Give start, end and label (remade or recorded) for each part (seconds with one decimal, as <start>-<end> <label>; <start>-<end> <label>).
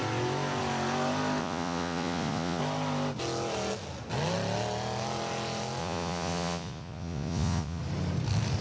0.0-1.4 recorded; 1.4-2.6 remade; 2.6-5.8 recorded; 5.8-7.8 remade; 7.8-8.6 recorded